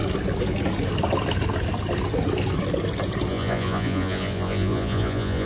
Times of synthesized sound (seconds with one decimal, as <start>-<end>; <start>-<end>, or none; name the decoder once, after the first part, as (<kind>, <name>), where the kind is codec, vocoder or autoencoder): 3.3-5.5 (vocoder, Vocos)